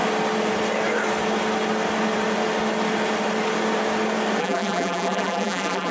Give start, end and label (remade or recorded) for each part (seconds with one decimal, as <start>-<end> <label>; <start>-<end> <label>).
0.0-4.4 recorded; 4.4-5.9 remade